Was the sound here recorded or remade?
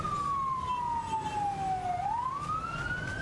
recorded